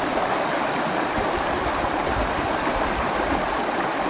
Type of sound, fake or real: real